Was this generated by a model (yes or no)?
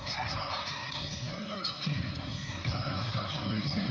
yes